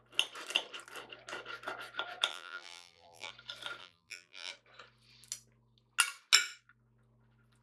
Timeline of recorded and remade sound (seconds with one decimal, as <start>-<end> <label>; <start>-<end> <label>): 0.0-2.3 recorded; 2.3-3.3 remade; 3.3-3.8 recorded; 3.8-4.5 remade; 4.5-7.6 recorded

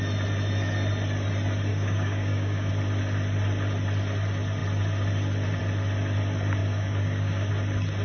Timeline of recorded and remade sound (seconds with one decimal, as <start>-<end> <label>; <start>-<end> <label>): 0.0-1.7 recorded; 1.7-2.7 remade; 2.7-6.6 recorded; 6.6-7.5 remade; 7.5-8.0 recorded

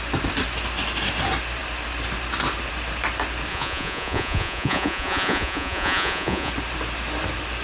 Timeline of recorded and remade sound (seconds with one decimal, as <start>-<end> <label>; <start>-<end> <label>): 0.0-3.5 recorded; 3.5-6.5 remade; 6.5-7.6 recorded

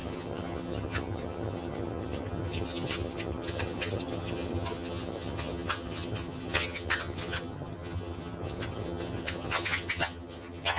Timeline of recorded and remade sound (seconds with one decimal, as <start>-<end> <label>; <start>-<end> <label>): 0.0-10.8 remade

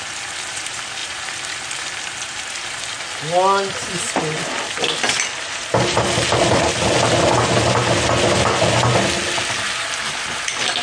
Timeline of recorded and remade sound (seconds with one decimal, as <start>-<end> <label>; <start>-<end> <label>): 0.0-10.8 recorded

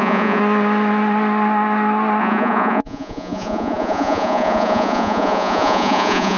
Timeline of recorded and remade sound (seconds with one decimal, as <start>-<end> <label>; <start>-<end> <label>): 0.0-0.4 remade; 0.4-2.2 recorded; 2.2-6.4 remade